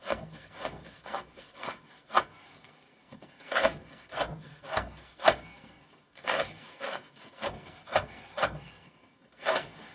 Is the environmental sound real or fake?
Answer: fake